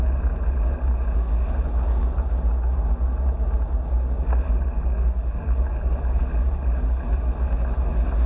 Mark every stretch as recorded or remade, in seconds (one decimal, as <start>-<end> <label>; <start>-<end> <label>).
0.0-8.3 recorded